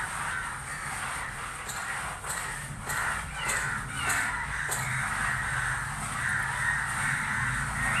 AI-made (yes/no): no